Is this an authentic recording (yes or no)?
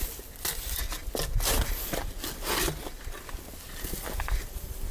yes